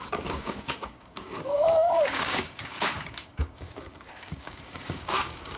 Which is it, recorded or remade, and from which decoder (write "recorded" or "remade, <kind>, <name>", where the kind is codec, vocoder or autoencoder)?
remade, codec, DAC